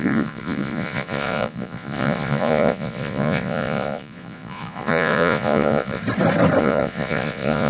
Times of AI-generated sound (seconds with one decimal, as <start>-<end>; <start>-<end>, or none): 0.0-6.0; 6.6-7.7